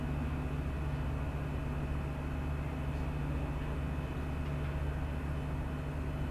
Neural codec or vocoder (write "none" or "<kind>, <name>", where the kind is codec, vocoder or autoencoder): none